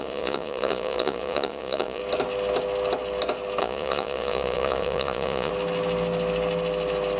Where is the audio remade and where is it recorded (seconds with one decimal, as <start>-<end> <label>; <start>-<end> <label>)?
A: 0.0-2.0 remade; 2.0-3.6 recorded; 3.6-5.5 remade; 5.5-7.2 recorded